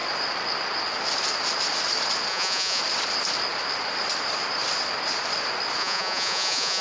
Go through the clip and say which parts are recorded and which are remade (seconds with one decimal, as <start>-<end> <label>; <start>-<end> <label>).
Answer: 0.0-2.3 recorded; 2.3-2.8 remade; 2.8-5.8 recorded; 5.8-6.8 remade